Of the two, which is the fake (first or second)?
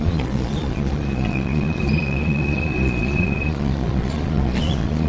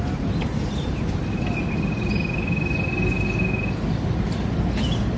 first